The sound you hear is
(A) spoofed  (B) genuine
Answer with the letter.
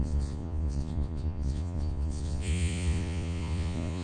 A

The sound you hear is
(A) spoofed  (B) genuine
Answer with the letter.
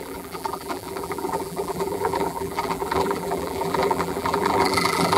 A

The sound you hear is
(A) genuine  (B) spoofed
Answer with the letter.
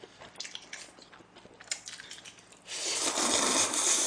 A